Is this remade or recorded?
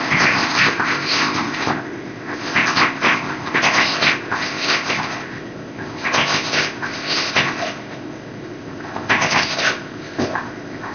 remade